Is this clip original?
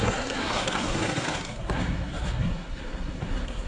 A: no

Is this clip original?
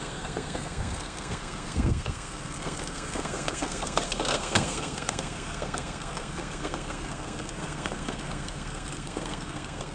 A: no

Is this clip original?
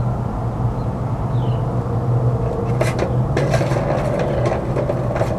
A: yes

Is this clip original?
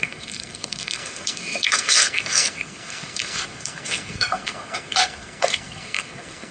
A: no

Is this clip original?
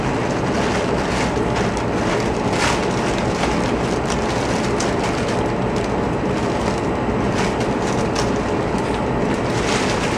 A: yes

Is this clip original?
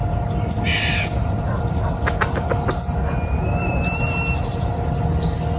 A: yes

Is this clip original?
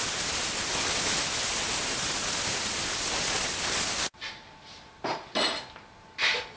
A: yes